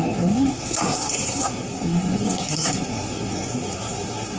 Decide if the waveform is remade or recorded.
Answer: remade